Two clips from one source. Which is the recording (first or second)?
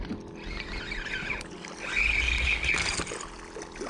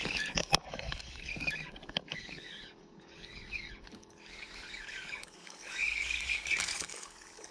first